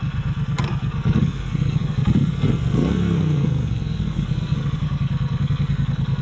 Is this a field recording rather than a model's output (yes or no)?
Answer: no